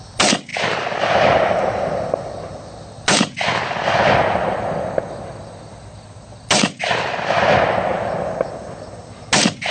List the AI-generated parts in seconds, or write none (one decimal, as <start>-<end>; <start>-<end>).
none